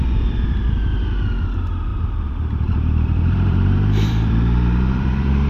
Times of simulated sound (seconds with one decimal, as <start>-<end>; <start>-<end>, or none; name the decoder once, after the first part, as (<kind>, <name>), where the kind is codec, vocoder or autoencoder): 1.9-5.5 (vocoder, BigVGAN v2)